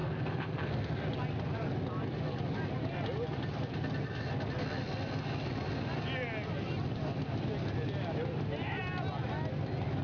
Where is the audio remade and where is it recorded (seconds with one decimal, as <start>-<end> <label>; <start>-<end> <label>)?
0.0-0.9 remade; 0.9-10.0 recorded